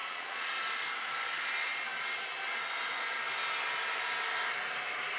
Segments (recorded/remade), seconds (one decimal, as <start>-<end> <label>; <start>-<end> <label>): 0.0-0.5 remade; 0.5-5.2 recorded

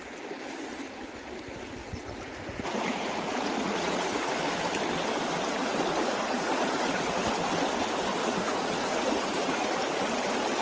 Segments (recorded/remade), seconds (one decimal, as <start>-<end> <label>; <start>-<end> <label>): 0.0-1.8 recorded; 1.8-4.4 remade; 4.4-6.5 recorded; 6.5-7.2 remade; 7.2-8.2 recorded; 8.2-9.7 remade; 9.7-10.6 recorded